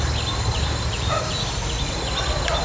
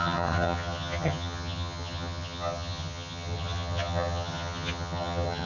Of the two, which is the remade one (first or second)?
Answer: second